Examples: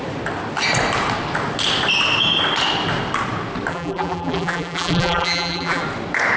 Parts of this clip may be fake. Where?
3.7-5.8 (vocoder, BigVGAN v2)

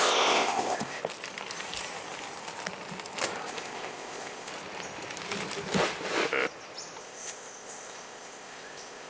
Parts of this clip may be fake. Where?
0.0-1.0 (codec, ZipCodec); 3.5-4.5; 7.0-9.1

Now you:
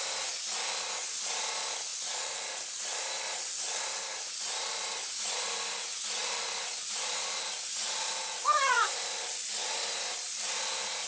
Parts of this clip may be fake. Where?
none

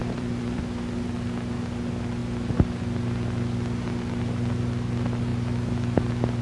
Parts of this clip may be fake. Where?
0.0-0.6 (vocoder, BigVGAN v2)

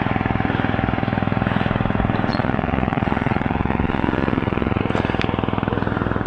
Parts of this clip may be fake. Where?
2.3-4.8 (vocoder, Vocos)

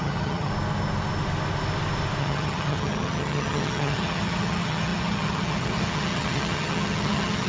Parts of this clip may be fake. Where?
0.0-0.5 (vocoder, HiFi-GAN); 2.2-7.5

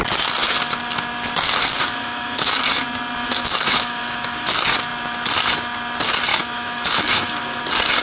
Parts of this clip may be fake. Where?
1.8-2.6 (autoencoder, DAC-VAE); 3.2-4.5; 6.3-7.6